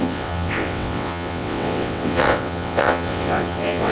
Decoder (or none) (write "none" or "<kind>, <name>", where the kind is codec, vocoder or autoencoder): vocoder, WaveNeXt